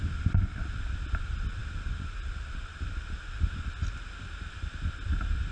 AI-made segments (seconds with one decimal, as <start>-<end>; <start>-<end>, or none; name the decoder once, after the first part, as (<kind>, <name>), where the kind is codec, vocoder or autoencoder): none